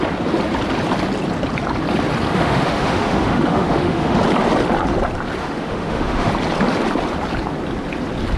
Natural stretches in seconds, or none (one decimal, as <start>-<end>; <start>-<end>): 0.0-2.3; 4.2-5.4; 6.3-8.4